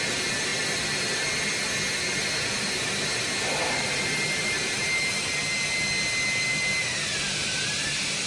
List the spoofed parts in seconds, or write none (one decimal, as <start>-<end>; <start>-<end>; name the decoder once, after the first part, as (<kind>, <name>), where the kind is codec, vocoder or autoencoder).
none

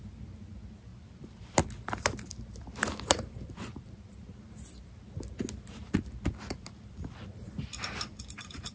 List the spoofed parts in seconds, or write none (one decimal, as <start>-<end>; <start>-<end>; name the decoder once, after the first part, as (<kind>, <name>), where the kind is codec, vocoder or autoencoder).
0.9-4.0 (vocoder, BigVGAN v2); 5.8-8.7